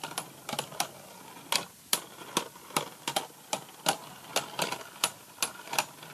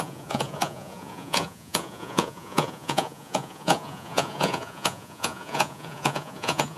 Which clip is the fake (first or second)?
second